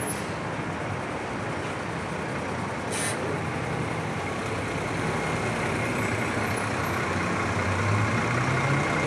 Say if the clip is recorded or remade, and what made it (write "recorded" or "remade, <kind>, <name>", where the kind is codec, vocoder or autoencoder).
recorded